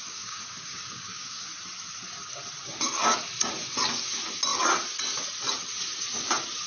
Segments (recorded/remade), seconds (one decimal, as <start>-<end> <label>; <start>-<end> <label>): 0.0-1.5 remade; 1.5-6.7 recorded